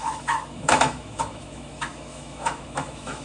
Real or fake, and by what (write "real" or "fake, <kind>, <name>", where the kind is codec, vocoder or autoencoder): fake, autoencoder, DAC-VAE